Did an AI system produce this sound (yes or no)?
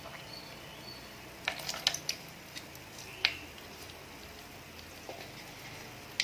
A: no